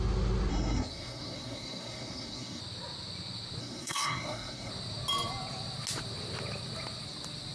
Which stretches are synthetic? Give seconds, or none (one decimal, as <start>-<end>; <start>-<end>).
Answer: 0.5-2.6; 3.6-4.7